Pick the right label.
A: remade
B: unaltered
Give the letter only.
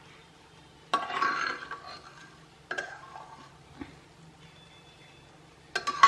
B